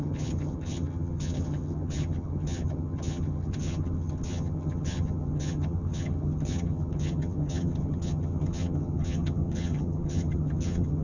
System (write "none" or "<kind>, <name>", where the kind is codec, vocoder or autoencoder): vocoder, HiFi-GAN